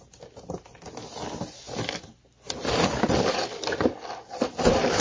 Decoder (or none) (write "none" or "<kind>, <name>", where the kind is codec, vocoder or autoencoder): none